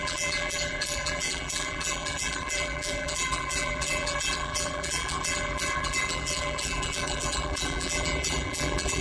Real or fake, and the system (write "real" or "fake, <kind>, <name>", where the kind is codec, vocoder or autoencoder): fake, vocoder, BigVGAN v2